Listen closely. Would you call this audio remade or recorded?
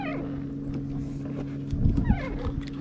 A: recorded